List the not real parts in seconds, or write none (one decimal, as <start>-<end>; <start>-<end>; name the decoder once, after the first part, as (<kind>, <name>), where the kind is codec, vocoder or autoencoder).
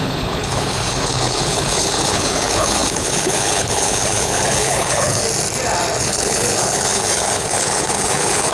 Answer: 0.0-5.2 (codec, HILCodec); 6.0-8.5